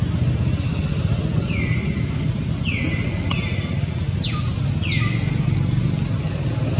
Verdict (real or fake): real